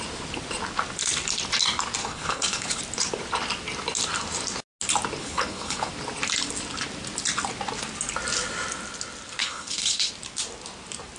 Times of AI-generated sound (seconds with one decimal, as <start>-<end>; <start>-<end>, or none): 2.0-2.8; 5.2-5.9; 9.4-10.1